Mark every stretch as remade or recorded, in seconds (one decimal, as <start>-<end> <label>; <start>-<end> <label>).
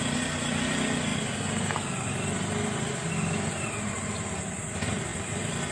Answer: 0.0-5.7 recorded